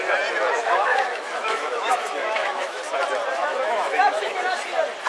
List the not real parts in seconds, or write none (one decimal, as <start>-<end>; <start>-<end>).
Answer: 0.6-2.8; 3.4-4.5